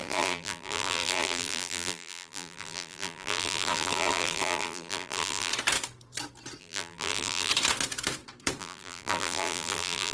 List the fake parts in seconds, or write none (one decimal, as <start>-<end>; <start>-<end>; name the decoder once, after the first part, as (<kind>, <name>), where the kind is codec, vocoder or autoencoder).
0.0-5.5 (vocoder, BigVGAN v2); 6.6-7.5; 8.6-10.1